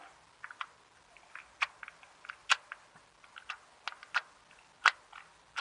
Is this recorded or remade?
recorded